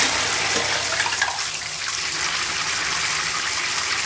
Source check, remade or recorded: recorded